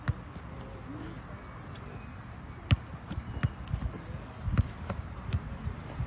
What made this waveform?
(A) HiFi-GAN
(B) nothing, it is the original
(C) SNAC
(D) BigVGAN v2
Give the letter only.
B